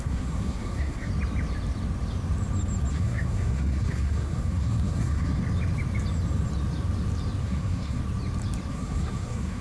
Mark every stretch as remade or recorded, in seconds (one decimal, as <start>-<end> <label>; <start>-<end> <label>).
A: 0.0-1.1 remade; 1.1-2.9 recorded; 2.9-5.4 remade; 5.4-7.4 recorded; 7.4-8.0 remade; 8.0-8.7 recorded; 8.7-9.6 remade